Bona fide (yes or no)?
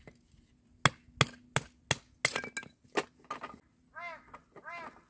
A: yes